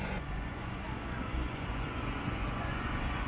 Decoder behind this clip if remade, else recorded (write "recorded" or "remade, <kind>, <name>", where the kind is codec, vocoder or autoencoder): remade, vocoder, Vocos